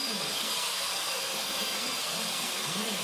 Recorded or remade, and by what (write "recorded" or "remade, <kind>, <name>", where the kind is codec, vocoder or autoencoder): remade, codec, SNAC